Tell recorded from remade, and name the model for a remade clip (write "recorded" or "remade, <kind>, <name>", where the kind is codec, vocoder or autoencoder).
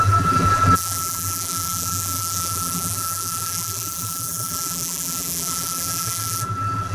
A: remade, vocoder, BigVGAN v2